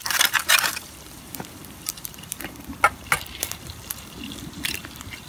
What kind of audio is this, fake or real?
fake